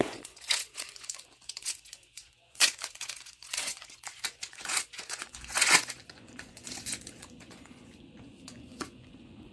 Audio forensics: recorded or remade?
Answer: remade